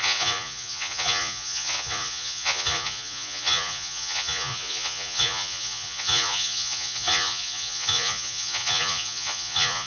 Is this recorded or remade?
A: remade